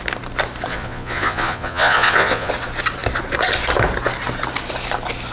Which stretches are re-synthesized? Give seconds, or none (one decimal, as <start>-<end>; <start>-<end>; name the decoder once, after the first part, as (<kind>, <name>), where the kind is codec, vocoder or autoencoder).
0.7-2.5 (vocoder, Vocos)